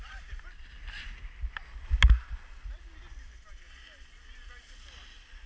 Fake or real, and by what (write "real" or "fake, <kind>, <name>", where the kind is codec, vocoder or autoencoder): real